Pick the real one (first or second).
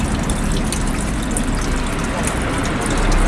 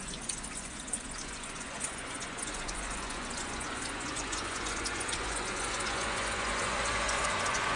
first